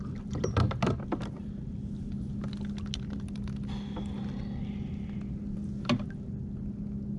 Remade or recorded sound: recorded